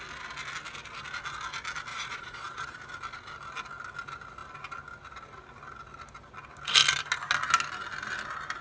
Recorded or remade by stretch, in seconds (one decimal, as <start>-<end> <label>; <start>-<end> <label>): 0.0-1.9 recorded; 1.9-2.8 remade; 2.8-8.6 recorded